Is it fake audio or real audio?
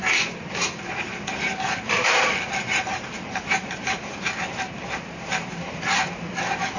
fake